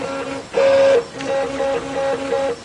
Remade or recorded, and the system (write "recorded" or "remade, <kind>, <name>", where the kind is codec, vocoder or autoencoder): recorded